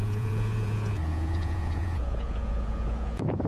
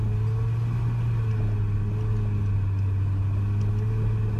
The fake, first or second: first